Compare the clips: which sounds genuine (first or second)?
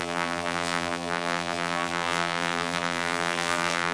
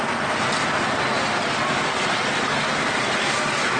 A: second